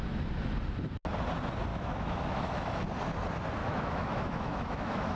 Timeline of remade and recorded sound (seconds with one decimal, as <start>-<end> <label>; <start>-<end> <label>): 0.0-1.7 recorded; 1.7-2.8 remade; 2.8-3.6 recorded; 3.6-5.2 remade